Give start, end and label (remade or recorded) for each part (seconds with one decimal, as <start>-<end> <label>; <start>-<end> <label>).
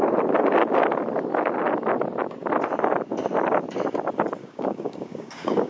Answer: 0.0-4.4 recorded; 4.4-5.7 remade